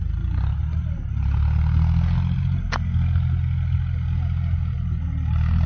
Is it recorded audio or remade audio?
recorded